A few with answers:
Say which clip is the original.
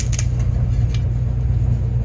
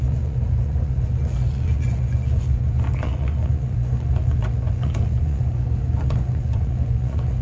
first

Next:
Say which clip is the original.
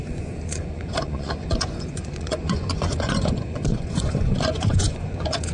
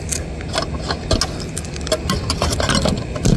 second